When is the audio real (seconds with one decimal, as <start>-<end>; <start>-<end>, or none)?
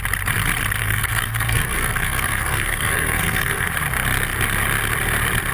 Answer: 0.0-0.8; 3.7-5.5